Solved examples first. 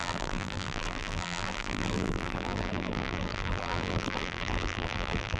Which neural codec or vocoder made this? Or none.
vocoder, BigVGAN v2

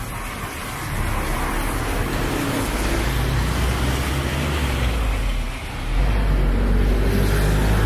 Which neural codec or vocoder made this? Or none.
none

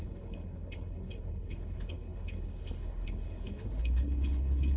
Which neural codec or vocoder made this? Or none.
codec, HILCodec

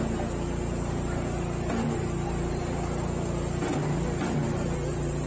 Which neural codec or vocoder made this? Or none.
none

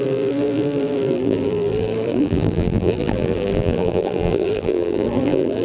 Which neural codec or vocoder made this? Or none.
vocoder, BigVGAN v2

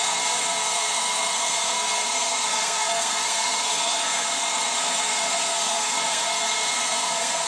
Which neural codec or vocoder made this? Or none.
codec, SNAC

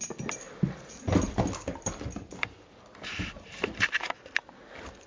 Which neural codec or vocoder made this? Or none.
none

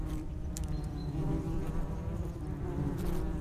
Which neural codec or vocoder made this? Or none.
vocoder, BigVGAN v2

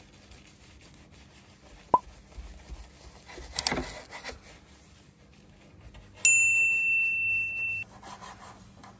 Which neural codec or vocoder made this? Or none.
none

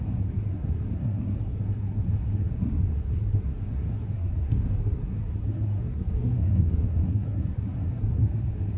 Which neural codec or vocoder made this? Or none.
codec, SNAC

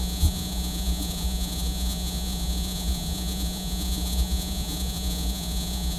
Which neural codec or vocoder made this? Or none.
vocoder, Vocos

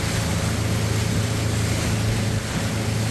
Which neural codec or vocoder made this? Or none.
none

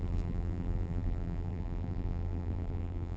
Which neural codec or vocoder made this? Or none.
vocoder, BigVGAN v2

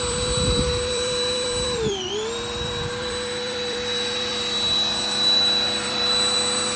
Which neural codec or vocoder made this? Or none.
vocoder, BigVGAN v2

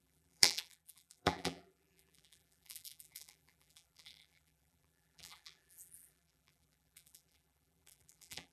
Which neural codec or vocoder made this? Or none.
vocoder, BigVGAN v2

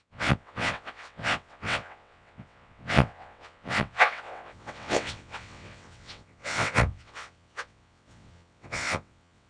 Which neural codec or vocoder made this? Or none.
vocoder, WaveNeXt